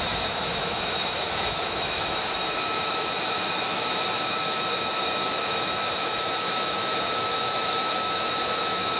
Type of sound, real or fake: fake